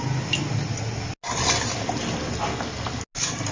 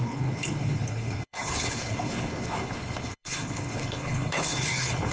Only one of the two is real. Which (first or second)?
first